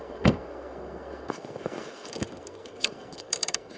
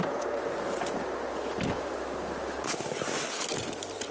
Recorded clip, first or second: second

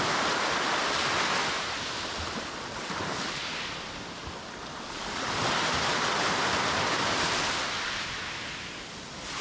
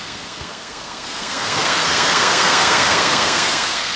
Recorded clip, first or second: first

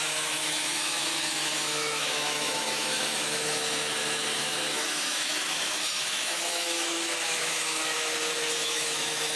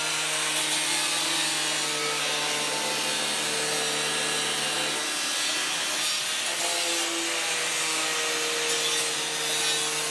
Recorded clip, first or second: second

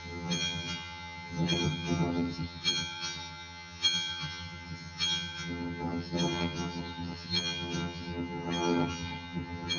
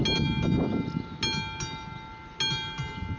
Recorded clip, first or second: second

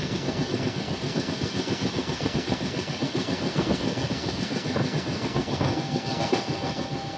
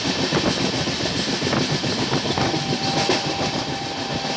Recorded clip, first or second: second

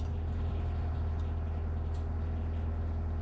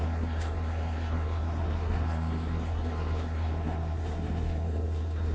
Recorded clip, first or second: first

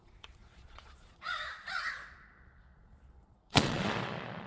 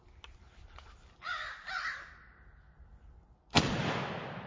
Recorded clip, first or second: second